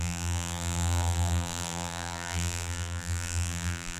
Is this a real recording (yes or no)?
no